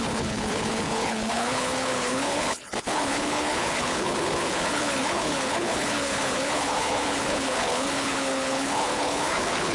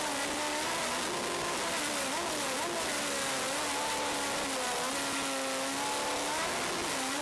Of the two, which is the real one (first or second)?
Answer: second